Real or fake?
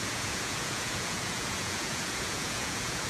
fake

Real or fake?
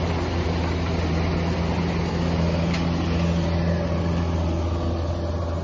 real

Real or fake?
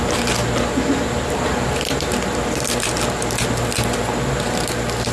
real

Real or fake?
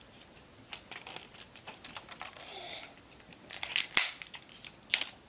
real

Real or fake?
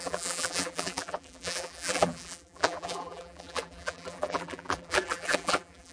fake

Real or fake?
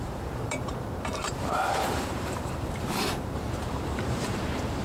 fake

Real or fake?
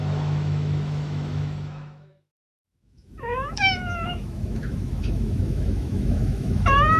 fake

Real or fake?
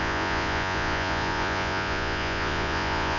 fake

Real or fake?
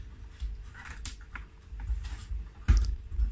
real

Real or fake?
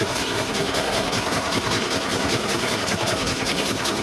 fake